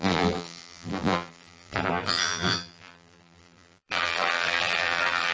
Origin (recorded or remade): remade